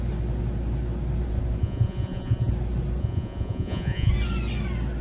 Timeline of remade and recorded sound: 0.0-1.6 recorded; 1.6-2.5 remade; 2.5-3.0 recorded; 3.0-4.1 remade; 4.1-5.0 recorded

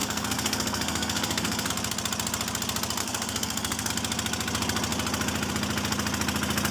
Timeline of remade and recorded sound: 0.0-1.7 remade; 1.7-3.0 recorded; 3.0-3.9 remade; 3.9-6.7 recorded

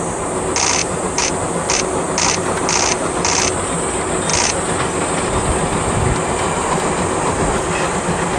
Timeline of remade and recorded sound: 0.0-0.8 recorded; 0.8-1.3 remade; 1.3-8.4 recorded